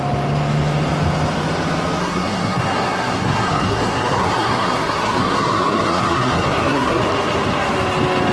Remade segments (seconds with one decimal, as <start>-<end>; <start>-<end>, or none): 2.0-7.0